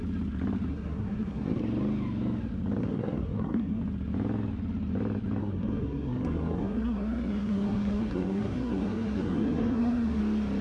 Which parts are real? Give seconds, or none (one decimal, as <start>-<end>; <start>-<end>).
0.0-0.7; 1.6-2.8; 3.8-5.4; 10.2-10.6